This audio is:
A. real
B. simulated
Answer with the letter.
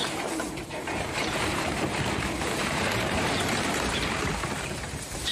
B